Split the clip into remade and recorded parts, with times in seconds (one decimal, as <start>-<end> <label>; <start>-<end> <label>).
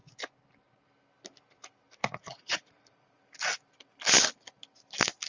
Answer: 0.0-2.0 recorded; 2.0-3.2 remade; 3.2-5.3 recorded